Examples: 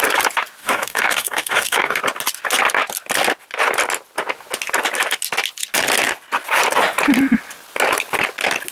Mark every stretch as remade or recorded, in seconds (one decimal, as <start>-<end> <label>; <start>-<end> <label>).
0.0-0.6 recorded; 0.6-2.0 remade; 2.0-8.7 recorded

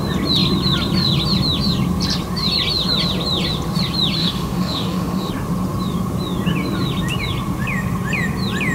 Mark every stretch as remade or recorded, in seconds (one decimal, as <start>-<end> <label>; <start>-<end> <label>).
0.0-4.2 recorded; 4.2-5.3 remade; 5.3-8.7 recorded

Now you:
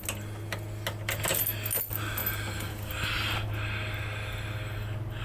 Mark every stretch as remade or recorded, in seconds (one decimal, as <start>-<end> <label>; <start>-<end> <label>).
0.0-5.2 recorded

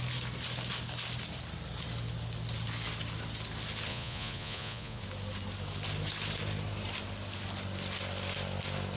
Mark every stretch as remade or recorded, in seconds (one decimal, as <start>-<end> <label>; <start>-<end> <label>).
0.0-3.9 recorded; 3.9-5.0 remade; 5.0-9.0 recorded

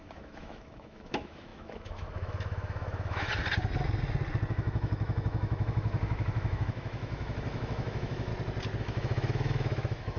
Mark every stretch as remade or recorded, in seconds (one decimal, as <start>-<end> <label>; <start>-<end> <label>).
0.0-3.3 remade; 3.3-4.5 recorded; 4.5-8.3 remade; 8.3-8.8 recorded; 8.8-10.2 remade

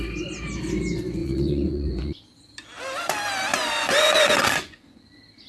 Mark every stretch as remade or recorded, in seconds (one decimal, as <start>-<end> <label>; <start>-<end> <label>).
0.0-1.2 recorded; 1.2-2.2 remade; 2.2-3.5 recorded; 3.5-5.0 remade; 5.0-5.5 recorded